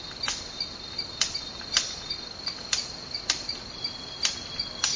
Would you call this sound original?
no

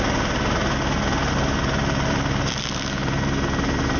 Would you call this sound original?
no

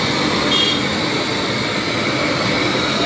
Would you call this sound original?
no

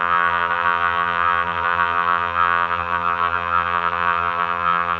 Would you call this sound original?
no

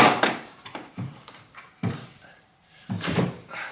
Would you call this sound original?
no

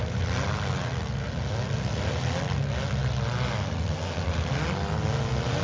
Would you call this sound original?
yes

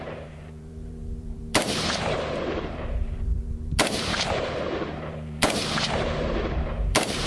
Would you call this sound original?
no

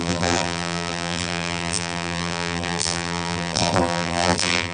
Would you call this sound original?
no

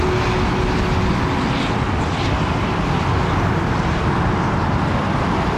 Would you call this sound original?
yes